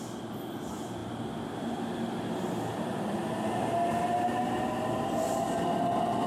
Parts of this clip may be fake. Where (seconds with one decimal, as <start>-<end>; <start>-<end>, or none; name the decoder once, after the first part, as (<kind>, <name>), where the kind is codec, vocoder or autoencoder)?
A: none